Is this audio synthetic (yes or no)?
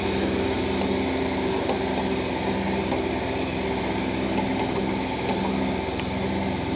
no